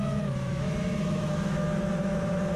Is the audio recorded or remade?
remade